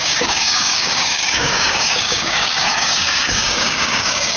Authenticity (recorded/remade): remade